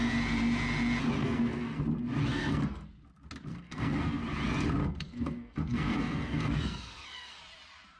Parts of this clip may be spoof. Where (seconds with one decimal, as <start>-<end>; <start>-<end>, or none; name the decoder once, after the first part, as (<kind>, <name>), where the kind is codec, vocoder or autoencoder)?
1.2-1.8 (codec, SNAC); 2.3-2.9; 3.5-4.2; 4.8-7.4